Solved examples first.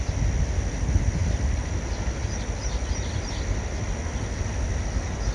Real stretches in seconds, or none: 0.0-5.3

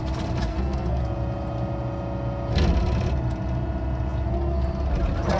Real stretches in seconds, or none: 0.0-0.5; 1.0-5.4

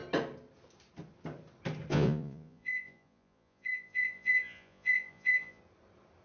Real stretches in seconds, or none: 0.0-1.9; 5.6-6.2

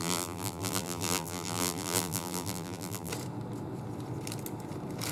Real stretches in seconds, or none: 3.1-5.1

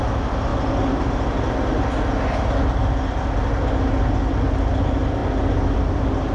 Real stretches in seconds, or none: 0.0-6.3

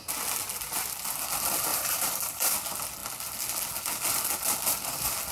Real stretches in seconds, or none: 0.0-1.7; 2.5-5.3

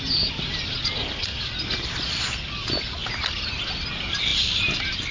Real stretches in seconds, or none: 0.0-5.1